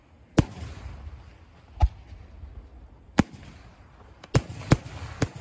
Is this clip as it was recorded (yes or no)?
yes